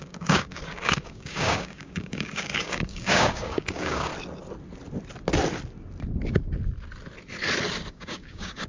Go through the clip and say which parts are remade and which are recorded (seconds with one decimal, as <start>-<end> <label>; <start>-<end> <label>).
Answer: 0.0-4.1 remade; 4.1-7.9 recorded; 7.9-8.7 remade